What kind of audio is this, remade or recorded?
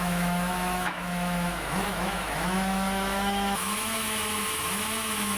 remade